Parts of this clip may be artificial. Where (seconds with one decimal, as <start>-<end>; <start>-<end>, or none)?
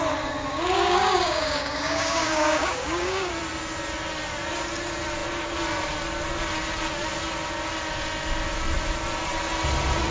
0.5-3.3